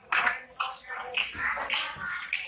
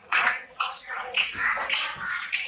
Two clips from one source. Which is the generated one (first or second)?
second